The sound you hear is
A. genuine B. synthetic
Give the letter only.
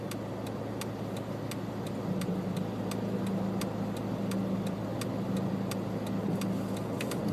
A